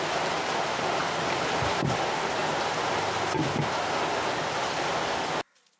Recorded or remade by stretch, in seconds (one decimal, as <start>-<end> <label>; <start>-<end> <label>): 0.0-1.0 recorded; 1.0-2.0 remade; 2.0-5.8 recorded